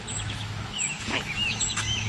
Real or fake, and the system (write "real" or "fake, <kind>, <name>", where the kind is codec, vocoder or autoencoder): fake, autoencoder, DAC-VAE